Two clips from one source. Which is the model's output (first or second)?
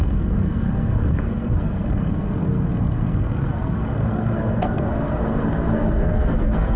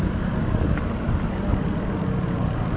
first